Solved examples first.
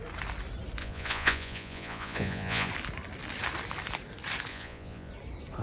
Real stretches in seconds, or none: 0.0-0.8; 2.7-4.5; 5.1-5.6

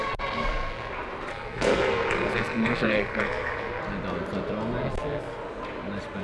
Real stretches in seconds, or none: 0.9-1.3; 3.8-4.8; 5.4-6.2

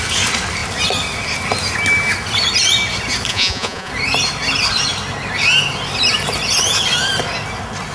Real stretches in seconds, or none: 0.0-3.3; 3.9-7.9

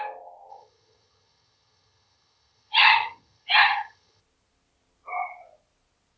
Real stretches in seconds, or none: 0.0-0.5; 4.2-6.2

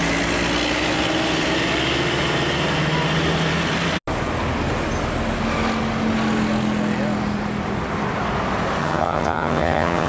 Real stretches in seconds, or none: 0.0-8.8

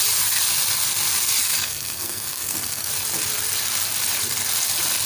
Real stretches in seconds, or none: 0.0-1.5; 2.9-5.1

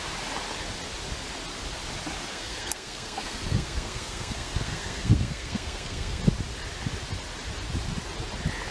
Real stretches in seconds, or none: 0.0-2.3; 6.2-8.7

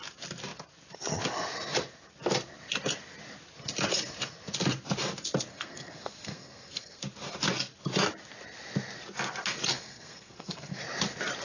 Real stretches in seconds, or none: 0.0-5.5; 7.0-9.7; 10.8-11.4